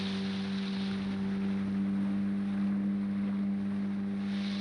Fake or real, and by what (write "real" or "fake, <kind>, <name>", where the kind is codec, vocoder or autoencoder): real